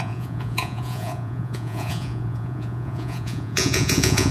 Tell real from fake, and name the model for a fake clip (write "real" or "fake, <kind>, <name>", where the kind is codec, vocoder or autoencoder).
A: fake, vocoder, Vocos